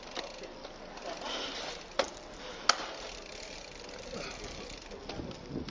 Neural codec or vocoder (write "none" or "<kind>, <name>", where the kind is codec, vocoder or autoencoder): none